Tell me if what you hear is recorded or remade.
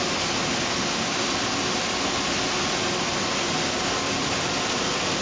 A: recorded